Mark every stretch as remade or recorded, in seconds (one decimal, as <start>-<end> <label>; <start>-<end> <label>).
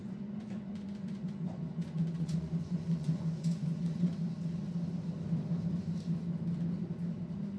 0.0-4.1 remade; 4.1-7.6 recorded